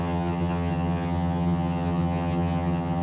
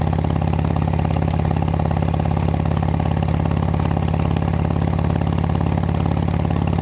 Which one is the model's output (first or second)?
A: first